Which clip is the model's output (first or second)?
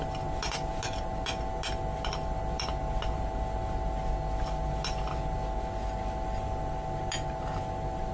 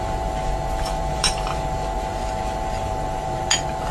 second